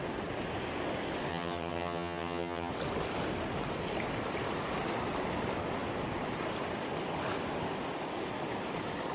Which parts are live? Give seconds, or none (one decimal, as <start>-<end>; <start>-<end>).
0.0-1.3; 2.7-9.1

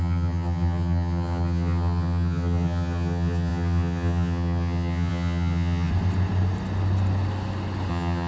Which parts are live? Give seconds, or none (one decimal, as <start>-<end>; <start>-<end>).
5.9-7.9

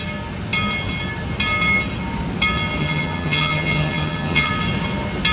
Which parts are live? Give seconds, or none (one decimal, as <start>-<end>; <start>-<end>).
0.0-2.8; 4.5-5.3

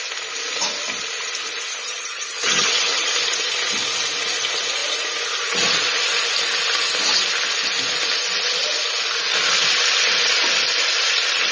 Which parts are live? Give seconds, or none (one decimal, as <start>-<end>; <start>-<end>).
0.0-1.7; 3.1-11.5

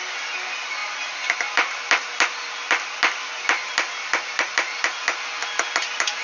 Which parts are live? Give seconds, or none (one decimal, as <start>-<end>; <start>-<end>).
0.0-6.2

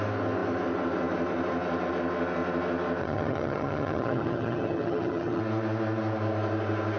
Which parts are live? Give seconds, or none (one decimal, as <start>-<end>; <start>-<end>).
0.0-3.0; 5.4-7.0

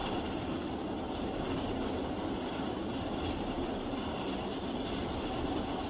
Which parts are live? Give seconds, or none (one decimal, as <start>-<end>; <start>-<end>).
0.0-5.9